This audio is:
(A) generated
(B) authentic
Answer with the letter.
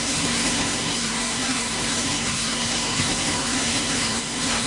A